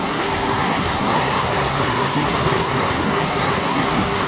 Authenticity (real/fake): fake